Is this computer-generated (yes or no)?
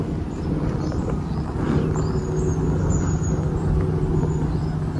no